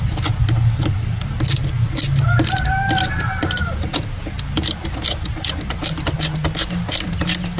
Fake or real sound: real